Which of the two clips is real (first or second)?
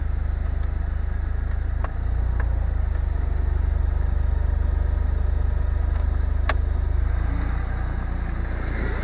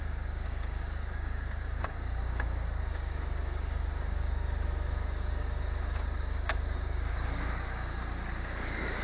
first